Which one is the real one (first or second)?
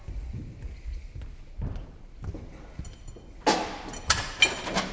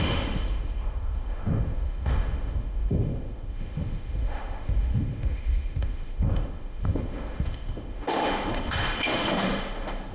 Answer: first